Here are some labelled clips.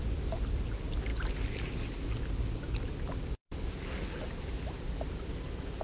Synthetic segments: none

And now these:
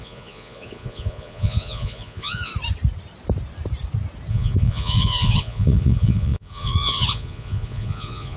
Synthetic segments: 0.0-2.5 (vocoder, Vocos); 4.3-8.4

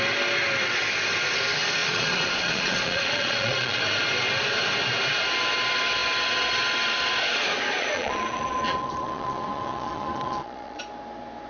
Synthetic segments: 1.8-3.8 (vocoder, Vocos); 7.8-10.8

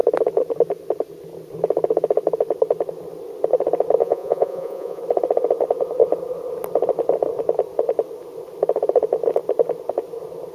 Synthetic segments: 4.0-5.0 (vocoder, Vocos)

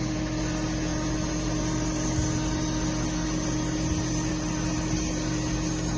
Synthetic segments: none

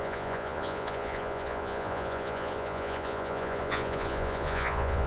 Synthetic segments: 0.0-5.1 (vocoder, Vocos)